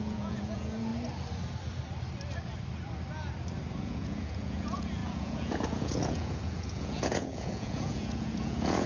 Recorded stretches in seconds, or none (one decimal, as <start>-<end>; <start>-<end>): 0.9-3.8